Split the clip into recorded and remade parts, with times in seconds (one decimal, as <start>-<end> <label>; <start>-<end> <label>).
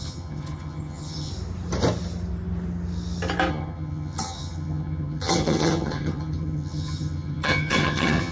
0.0-1.3 remade; 1.3-3.5 recorded; 3.5-8.3 remade